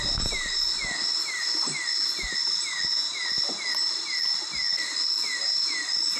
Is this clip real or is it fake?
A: real